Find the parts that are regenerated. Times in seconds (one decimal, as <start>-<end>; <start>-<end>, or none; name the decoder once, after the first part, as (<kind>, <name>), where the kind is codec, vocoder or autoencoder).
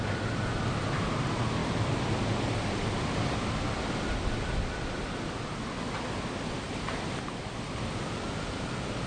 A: 1.6-2.3 (vocoder, BigVGAN v2)